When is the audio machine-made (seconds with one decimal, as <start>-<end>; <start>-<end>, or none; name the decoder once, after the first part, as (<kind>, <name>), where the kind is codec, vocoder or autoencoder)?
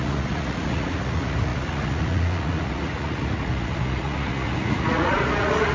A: 0.0-5.7 (vocoder, Vocos)